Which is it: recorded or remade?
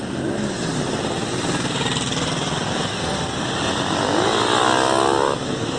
recorded